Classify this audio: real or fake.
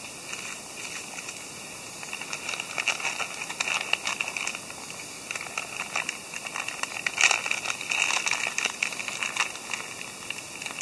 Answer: real